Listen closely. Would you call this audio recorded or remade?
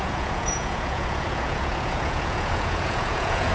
remade